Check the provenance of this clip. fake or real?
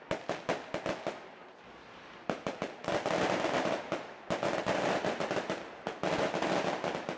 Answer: real